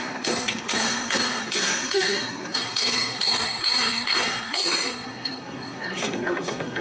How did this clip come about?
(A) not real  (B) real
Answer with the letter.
A